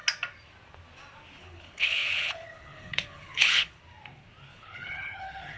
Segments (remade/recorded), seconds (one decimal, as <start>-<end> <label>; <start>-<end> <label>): 0.0-1.4 recorded; 1.4-3.8 remade; 3.8-4.5 recorded; 4.5-5.6 remade